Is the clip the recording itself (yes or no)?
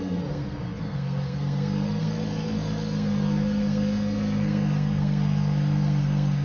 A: no